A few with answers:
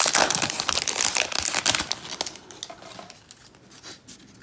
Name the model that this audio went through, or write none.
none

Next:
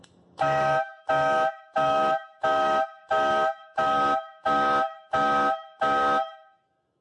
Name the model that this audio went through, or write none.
autoencoder, DAC-VAE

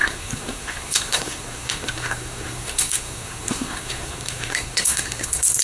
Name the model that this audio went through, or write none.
codec, SNAC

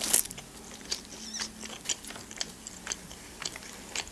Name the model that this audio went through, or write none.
none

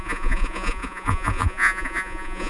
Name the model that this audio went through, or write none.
vocoder, Vocos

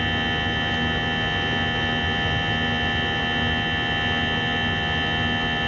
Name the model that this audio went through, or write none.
none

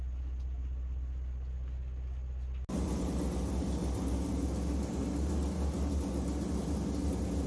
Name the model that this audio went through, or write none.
none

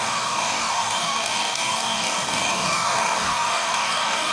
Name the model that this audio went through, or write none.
codec, DAC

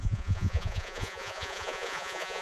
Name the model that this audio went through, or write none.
vocoder, Vocos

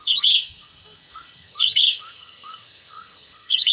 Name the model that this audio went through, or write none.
codec, SNAC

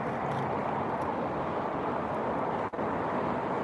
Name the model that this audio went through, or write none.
none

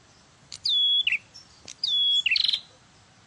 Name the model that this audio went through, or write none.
none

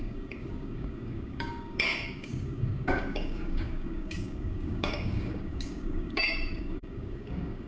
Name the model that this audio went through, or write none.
codec, DAC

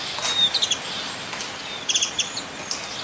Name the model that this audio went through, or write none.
none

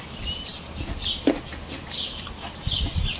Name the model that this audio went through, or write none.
none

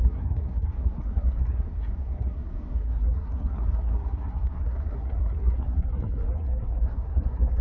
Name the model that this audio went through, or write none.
codec, SNAC